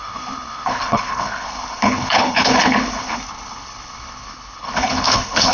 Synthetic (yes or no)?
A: yes